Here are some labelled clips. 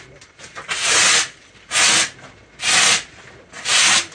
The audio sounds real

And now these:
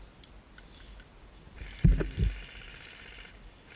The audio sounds real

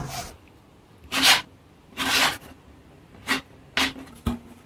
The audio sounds real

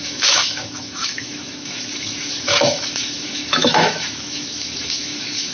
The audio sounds fake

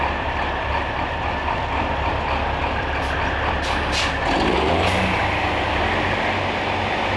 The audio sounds real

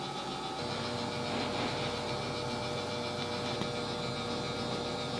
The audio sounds real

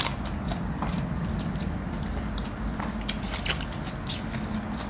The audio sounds real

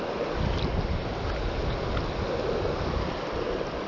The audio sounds real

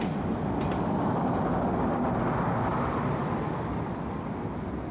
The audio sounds real